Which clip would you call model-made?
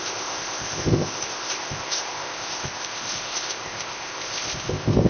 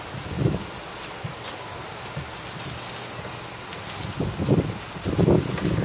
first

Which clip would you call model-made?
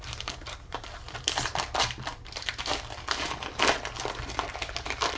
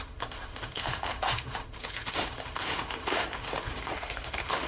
second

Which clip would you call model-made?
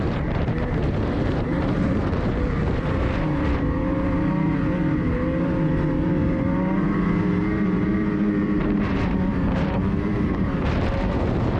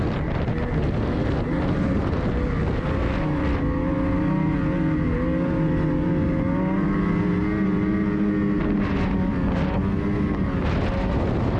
first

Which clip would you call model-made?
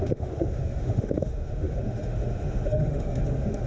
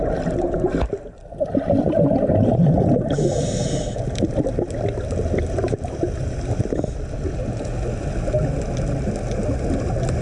first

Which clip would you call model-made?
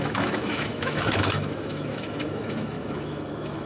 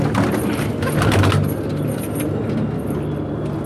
first